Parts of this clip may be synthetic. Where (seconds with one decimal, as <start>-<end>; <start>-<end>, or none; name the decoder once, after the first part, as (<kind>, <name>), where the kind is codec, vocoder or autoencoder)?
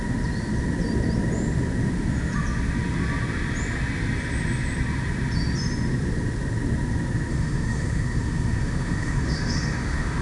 7.3-10.2 (autoencoder, DAC-VAE)